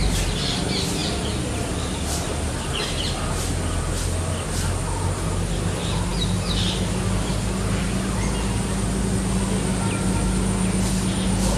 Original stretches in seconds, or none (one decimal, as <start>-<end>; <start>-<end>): 0.0-11.6